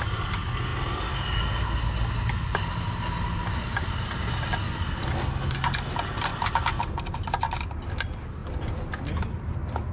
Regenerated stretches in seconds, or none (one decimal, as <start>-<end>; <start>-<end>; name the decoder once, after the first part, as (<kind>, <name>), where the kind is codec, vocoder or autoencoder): 6.3-7.2 (vocoder, BigVGAN v2); 8.4-9.4